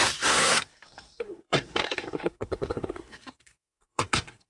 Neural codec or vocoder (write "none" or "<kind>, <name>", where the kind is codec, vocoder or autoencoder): codec, SNAC